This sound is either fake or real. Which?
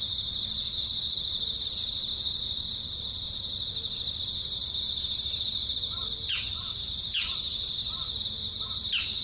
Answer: real